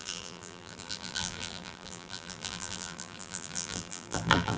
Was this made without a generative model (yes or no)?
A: no